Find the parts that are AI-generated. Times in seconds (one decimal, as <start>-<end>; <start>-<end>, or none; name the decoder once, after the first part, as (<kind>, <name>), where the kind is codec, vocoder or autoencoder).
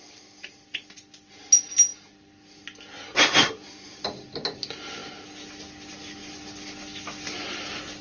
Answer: none